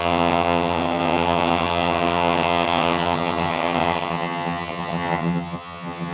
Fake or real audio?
fake